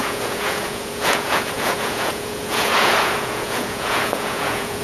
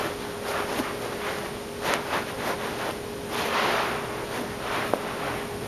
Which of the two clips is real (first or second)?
second